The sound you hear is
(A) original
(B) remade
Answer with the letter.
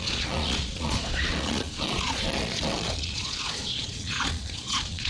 B